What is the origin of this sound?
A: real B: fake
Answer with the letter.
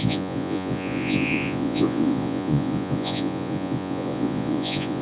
B